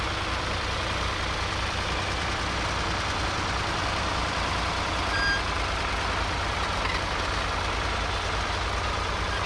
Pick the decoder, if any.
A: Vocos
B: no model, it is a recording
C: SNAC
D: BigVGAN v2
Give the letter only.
B